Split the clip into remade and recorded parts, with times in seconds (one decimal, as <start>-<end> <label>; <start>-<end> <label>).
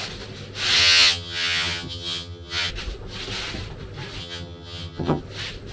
0.0-0.8 recorded; 0.8-2.7 remade; 2.7-4.2 recorded; 4.2-5.2 remade; 5.2-5.7 recorded